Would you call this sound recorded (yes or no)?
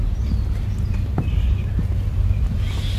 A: yes